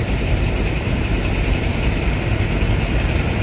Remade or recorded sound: recorded